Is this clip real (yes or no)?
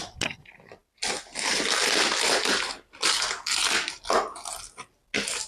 yes